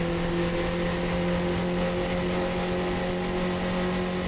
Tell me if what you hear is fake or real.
real